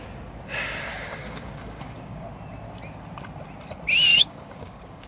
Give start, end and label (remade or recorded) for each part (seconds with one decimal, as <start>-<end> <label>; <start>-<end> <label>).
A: 0.0-0.9 recorded; 0.9-2.2 remade; 2.2-4.1 recorded; 4.1-5.1 remade

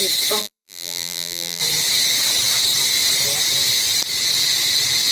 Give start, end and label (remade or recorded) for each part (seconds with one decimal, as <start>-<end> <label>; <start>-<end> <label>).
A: 0.0-0.4 recorded; 0.4-1.6 remade; 1.6-5.1 recorded

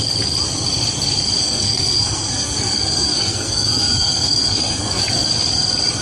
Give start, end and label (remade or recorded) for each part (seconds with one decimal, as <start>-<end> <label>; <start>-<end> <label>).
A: 0.0-1.4 recorded; 1.4-5.0 remade; 5.0-6.0 recorded